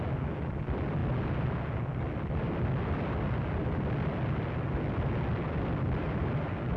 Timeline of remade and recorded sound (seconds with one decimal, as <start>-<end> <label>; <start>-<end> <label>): 0.0-6.8 recorded